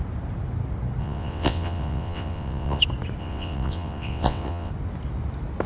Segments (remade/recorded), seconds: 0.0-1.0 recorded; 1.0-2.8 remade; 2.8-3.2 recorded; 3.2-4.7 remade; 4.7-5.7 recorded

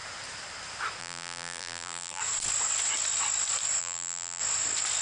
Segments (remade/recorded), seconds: 0.0-1.0 recorded; 1.0-2.2 remade; 2.2-3.8 recorded; 3.8-4.4 remade; 4.4-5.0 recorded